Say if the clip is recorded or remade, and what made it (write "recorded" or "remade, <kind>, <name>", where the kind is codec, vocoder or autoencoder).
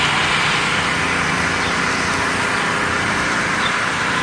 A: recorded